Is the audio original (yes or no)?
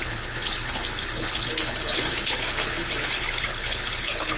no